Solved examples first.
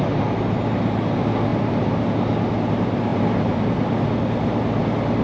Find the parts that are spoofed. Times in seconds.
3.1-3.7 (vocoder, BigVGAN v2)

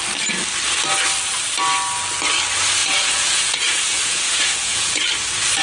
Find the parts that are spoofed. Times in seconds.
2.8-5.1 (vocoder, Vocos)

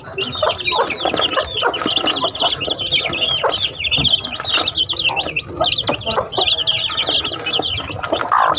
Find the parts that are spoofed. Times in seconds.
none

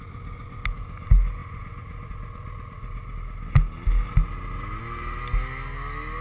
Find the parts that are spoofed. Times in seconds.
none